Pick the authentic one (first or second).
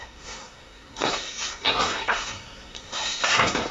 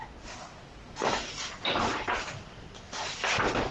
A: second